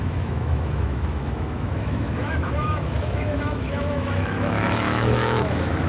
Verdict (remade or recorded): remade